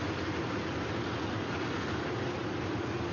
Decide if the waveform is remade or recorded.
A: recorded